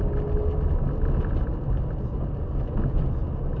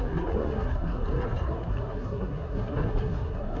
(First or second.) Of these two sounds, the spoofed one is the second